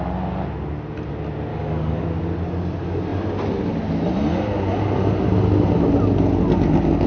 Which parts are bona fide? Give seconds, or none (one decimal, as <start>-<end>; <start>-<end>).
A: 0.0-1.5; 2.0-7.1

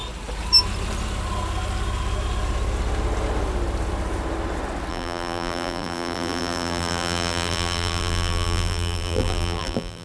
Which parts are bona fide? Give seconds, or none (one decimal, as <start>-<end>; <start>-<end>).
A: 0.0-4.9

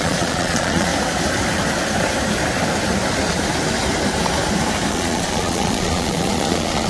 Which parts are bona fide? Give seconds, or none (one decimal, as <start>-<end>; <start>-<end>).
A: 0.9-4.9

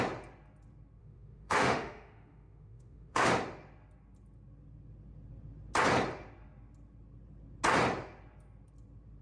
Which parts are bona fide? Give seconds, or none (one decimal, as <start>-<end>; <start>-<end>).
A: 0.0-1.0; 3.3-9.2